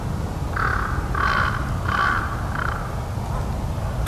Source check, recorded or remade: recorded